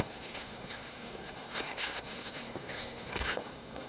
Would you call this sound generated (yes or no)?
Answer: yes